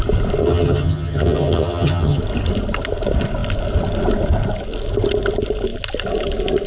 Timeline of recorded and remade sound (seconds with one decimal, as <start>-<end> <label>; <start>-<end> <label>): 0.0-0.4 recorded; 0.4-2.2 remade; 2.2-6.7 recorded